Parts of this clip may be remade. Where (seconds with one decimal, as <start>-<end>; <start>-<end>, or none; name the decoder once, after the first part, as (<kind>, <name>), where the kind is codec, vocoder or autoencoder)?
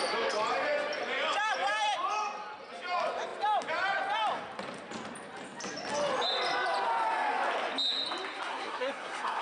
8.5-9.4 (codec, SNAC)